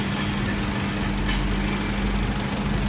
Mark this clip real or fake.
real